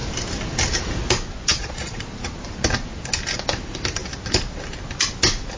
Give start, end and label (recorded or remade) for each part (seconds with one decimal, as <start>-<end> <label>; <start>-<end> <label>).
0.0-1.5 recorded; 1.5-2.3 remade; 2.3-5.6 recorded